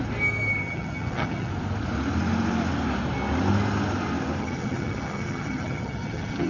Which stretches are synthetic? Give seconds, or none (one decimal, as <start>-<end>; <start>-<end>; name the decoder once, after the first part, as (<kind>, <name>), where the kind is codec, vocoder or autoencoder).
0.6-1.5 (vocoder, HiFi-GAN); 4.4-6.5